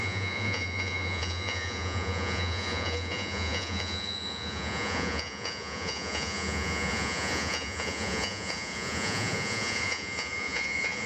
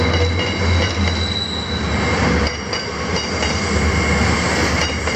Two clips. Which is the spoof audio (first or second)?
first